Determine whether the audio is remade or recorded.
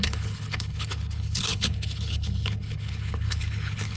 remade